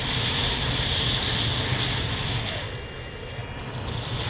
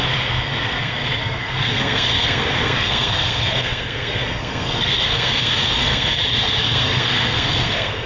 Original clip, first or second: first